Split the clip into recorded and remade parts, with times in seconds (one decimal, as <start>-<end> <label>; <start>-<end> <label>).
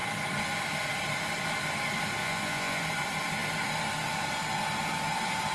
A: 0.0-2.2 recorded; 2.2-2.8 remade; 2.8-5.5 recorded